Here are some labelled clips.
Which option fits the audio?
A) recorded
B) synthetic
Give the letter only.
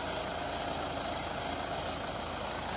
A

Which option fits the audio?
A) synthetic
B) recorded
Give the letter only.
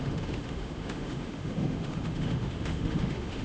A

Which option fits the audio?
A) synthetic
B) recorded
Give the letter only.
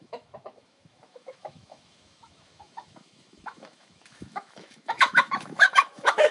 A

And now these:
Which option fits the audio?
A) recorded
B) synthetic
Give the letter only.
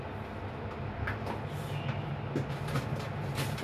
A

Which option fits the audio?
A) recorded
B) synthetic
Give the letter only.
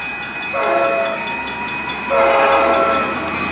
A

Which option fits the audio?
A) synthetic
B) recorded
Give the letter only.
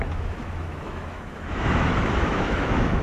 A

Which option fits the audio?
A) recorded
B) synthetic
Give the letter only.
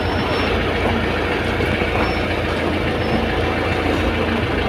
A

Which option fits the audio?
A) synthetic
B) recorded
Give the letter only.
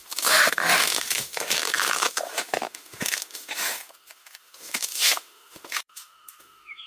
A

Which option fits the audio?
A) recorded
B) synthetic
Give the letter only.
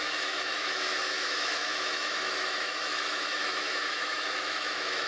B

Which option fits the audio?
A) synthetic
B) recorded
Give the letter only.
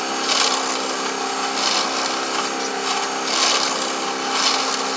B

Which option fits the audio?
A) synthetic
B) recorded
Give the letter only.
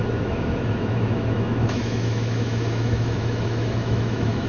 A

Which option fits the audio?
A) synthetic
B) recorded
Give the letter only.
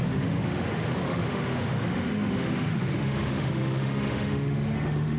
A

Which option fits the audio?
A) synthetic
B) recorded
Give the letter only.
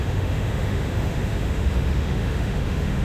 A